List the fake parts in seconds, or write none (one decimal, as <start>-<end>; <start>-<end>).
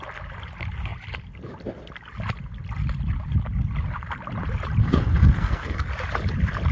4.8-5.9